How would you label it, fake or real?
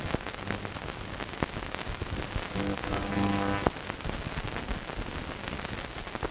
real